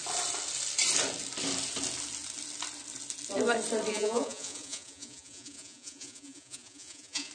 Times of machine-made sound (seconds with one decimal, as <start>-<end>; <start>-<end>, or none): 3.9-7.3